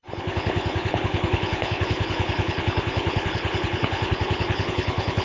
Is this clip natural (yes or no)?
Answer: no